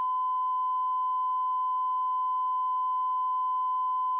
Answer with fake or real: real